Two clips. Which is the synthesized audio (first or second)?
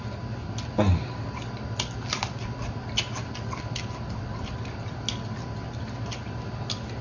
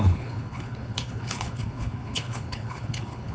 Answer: second